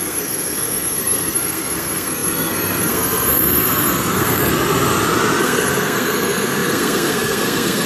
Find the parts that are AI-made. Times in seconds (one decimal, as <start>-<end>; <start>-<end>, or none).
0.0-4.5; 5.4-7.9